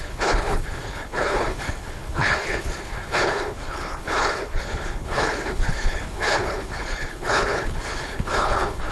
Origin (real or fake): fake